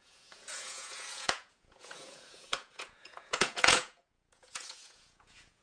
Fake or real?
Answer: fake